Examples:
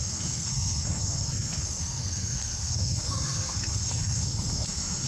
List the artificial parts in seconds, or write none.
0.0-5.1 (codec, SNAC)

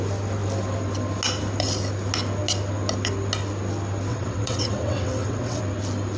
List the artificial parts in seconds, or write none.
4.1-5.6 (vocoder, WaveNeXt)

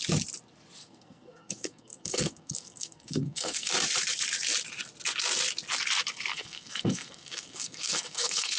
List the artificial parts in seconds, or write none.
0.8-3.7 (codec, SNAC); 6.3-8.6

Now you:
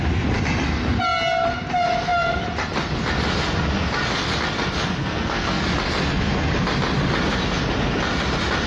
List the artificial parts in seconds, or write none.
5.0-5.6 (codec, SNAC)

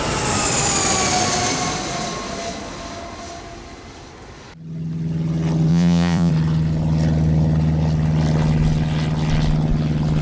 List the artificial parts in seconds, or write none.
5.7-6.3 (vocoder, Vocos)

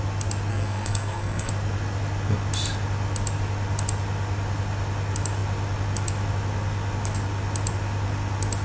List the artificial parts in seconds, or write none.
0.5-1.5 (codec, SNAC)